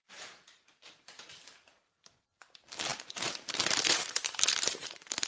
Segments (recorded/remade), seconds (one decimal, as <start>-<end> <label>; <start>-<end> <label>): 0.0-1.3 remade; 1.3-2.9 recorded; 2.9-5.3 remade